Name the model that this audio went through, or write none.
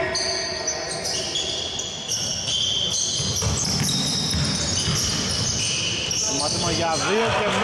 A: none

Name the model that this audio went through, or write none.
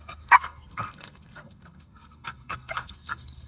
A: codec, SNAC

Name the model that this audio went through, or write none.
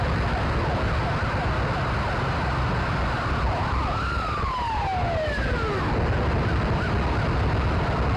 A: none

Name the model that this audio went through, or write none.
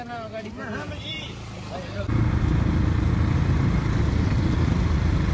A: none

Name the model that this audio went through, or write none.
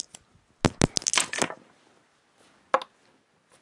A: none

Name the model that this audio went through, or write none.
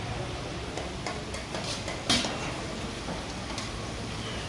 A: none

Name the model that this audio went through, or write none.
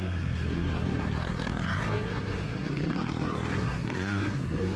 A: codec, SNAC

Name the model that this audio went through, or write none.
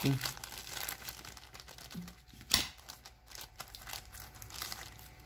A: none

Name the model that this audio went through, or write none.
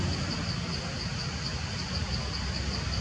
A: none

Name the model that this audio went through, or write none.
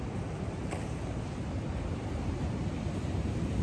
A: none